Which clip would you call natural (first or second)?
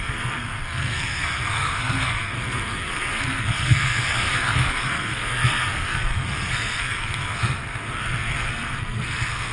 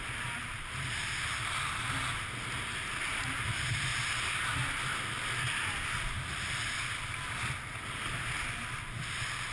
second